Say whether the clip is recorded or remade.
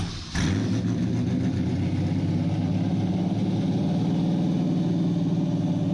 recorded